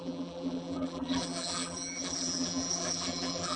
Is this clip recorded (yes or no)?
no